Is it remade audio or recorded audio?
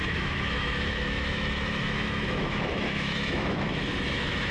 remade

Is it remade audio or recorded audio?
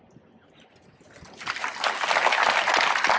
recorded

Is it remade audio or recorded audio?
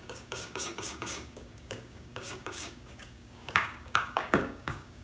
remade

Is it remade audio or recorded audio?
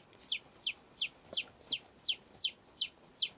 recorded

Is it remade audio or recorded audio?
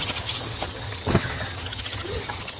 remade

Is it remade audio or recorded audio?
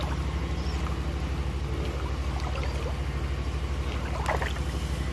recorded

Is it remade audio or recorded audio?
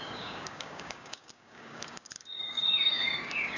remade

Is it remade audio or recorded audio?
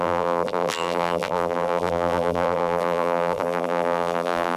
remade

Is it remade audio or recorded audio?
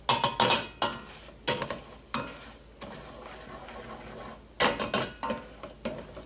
recorded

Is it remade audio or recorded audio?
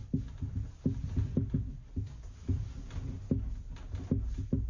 recorded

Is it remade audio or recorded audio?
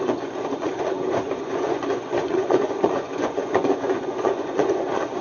remade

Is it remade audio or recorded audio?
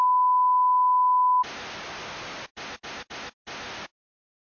recorded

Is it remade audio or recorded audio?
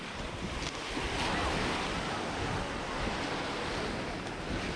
recorded